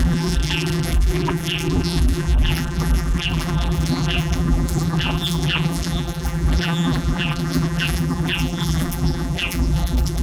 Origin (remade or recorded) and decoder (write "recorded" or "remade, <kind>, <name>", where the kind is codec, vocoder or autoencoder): remade, vocoder, BigVGAN v2